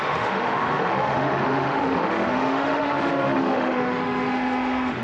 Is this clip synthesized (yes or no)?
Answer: yes